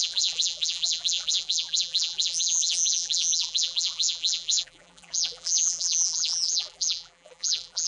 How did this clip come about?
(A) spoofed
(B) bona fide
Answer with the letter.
A